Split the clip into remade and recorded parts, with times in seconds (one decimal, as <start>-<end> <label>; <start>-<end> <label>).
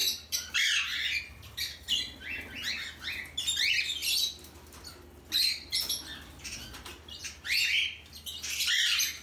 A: 0.0-1.2 remade; 1.2-9.2 recorded